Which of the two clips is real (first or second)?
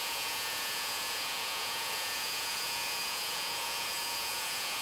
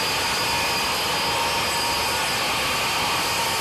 second